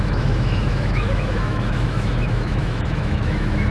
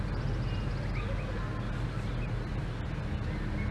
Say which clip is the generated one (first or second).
first